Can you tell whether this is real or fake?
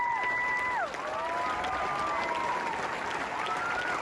real